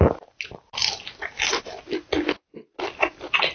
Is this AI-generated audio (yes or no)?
no